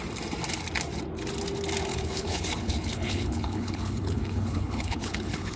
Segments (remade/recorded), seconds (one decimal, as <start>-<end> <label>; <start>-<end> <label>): 0.0-1.9 recorded; 1.9-5.6 remade